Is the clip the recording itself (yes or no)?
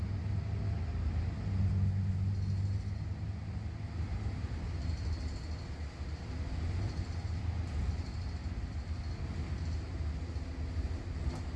yes